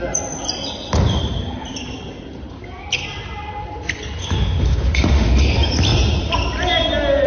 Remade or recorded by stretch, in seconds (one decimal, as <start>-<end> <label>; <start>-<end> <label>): 0.0-4.2 recorded; 4.2-5.4 remade; 5.4-7.3 recorded

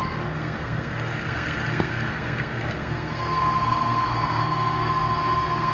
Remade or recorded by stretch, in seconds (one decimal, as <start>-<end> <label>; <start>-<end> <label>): 0.0-5.7 remade

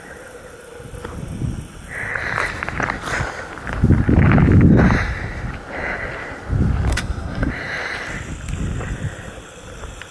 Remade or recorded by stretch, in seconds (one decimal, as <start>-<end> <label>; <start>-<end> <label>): 0.0-6.9 recorded; 6.9-7.5 remade; 7.5-10.1 recorded

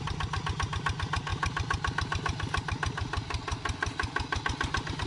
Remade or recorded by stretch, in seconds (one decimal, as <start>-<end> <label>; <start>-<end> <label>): 0.0-5.1 recorded

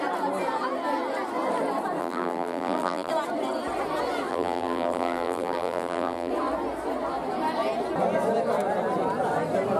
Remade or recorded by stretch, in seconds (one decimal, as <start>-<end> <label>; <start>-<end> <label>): 0.0-2.0 recorded; 2.0-3.1 remade; 3.1-4.3 recorded; 4.3-6.3 remade; 6.3-9.8 recorded

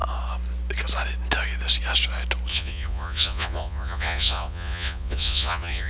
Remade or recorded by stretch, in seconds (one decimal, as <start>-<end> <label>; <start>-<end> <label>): 0.0-2.5 recorded; 2.5-5.9 remade

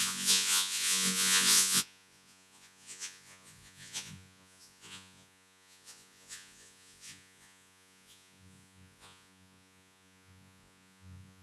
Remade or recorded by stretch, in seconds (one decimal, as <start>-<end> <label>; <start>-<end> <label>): 0.0-11.4 remade

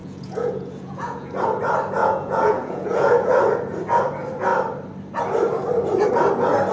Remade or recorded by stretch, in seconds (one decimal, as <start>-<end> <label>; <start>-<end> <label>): 0.0-1.3 remade; 1.3-2.0 recorded; 2.0-3.3 remade; 3.3-6.7 recorded